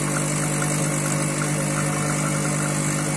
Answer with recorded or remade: recorded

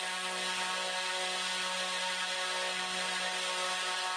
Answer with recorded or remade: recorded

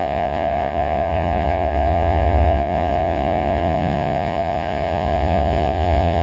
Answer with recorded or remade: remade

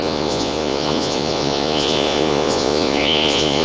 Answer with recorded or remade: remade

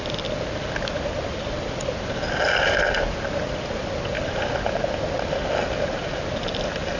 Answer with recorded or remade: recorded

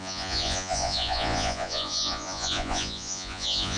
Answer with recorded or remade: remade